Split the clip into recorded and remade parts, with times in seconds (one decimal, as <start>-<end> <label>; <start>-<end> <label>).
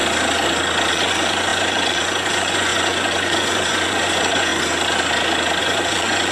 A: 0.0-0.9 recorded; 0.9-4.5 remade; 4.5-5.6 recorded; 5.6-6.3 remade